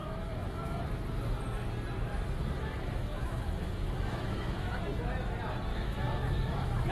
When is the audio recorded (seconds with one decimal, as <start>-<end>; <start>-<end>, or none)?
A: 0.8-2.6; 4.8-5.7